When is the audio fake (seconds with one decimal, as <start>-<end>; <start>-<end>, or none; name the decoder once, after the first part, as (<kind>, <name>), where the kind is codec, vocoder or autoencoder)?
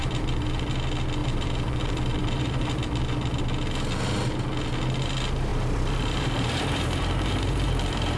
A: 0.0-0.7 (vocoder, BigVGAN v2); 1.2-3.4; 5.5-8.2